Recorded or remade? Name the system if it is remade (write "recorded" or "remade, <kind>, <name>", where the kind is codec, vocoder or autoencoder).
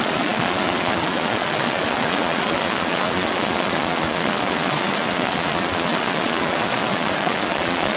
remade, vocoder, Vocos